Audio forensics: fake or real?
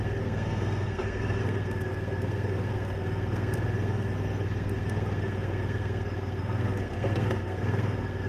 fake